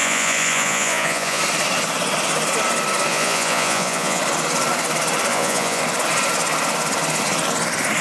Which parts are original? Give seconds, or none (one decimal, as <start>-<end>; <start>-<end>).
1.4-3.1; 4.2-5.3; 5.8-8.0